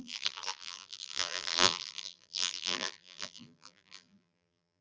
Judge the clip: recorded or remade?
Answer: remade